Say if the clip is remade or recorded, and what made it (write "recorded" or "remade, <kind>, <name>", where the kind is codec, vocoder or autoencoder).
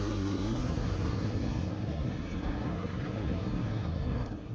remade, codec, SNAC